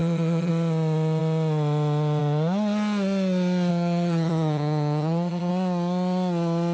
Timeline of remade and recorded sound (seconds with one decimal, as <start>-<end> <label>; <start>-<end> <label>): 0.0-0.5 remade; 0.5-3.7 recorded; 3.7-5.5 remade; 5.5-6.7 recorded